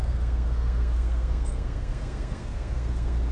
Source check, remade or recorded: remade